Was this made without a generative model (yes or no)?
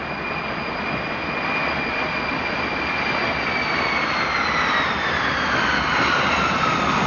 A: yes